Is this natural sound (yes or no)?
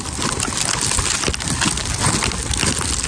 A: yes